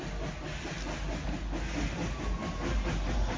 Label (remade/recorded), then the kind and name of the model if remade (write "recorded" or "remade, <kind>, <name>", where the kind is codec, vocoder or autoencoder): recorded